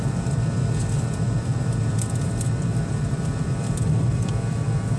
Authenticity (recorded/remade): remade